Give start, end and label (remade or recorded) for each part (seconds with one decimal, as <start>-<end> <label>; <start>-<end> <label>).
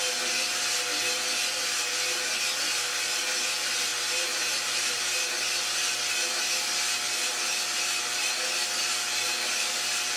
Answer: 0.0-3.9 recorded; 3.9-5.0 remade; 5.0-10.2 recorded